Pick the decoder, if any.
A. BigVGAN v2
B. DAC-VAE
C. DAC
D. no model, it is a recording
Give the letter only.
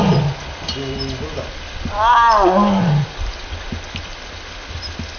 D